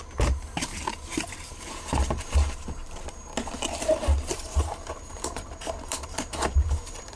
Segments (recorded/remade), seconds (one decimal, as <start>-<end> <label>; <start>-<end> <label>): 0.0-2.8 remade; 2.8-4.3 recorded; 4.3-7.2 remade